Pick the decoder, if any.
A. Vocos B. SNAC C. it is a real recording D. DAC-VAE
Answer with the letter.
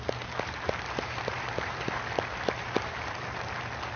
C